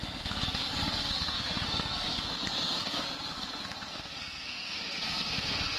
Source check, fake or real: fake